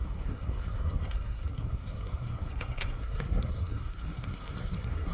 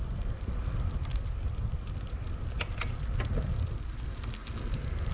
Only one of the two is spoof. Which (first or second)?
first